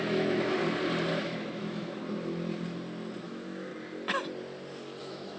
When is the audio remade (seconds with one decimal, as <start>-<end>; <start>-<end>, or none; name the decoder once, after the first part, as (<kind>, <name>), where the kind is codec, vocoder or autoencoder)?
0.0-0.6 (autoencoder, DAC-VAE); 1.1-2.0; 3.2-3.7; 5.0-5.4